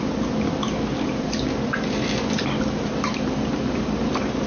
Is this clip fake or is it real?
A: real